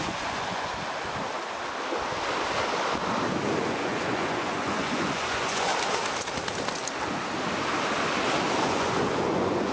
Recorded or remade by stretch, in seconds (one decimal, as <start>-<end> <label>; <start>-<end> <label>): 0.0-0.7 remade; 0.7-3.6 recorded; 3.6-5.7 remade; 5.7-8.6 recorded; 8.6-9.7 remade